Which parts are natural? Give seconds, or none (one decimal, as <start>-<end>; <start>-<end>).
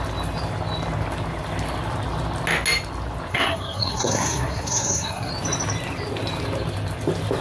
0.0-3.3; 5.3-7.4